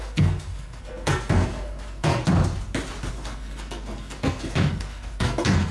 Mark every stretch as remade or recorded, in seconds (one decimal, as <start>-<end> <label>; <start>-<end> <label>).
0.0-2.2 remade; 2.2-3.1 recorded; 3.1-5.7 remade